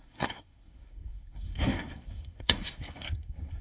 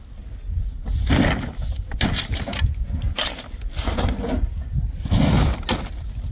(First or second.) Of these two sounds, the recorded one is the second